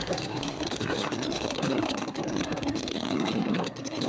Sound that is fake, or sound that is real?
fake